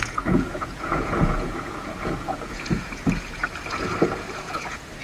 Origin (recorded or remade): remade